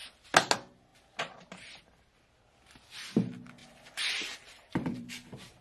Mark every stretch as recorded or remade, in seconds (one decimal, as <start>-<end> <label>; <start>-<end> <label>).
0.0-0.9 recorded; 0.9-1.7 remade; 1.7-3.6 recorded; 3.6-5.1 remade; 5.1-5.6 recorded